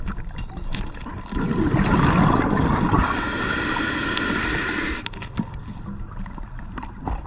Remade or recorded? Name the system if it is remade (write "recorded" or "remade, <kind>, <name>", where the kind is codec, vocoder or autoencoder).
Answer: recorded